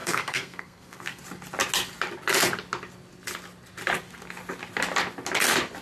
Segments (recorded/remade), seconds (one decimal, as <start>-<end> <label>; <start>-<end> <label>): 0.0-1.2 remade; 1.2-5.8 recorded